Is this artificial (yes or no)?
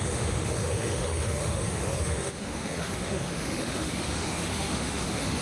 yes